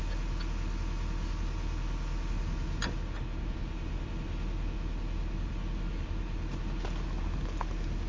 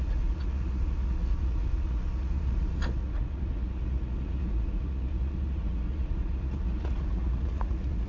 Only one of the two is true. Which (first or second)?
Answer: first